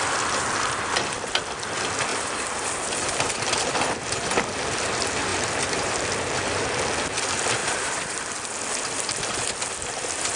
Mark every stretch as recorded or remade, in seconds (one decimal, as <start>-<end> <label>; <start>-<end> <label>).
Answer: 0.0-2.1 recorded; 2.1-3.5 remade; 3.5-5.3 recorded; 5.3-5.9 remade; 5.9-7.6 recorded; 7.6-8.2 remade; 8.2-10.4 recorded